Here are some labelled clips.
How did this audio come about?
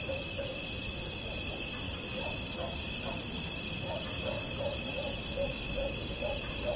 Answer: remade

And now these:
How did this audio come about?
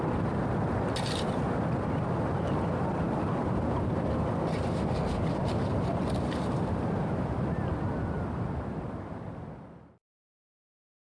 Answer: recorded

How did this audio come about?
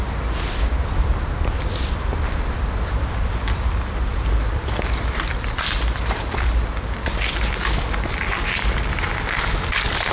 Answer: remade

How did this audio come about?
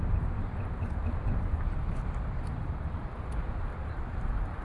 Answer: remade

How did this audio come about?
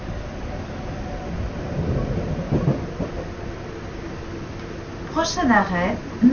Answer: recorded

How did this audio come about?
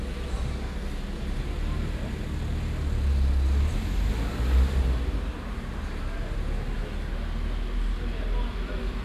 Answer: recorded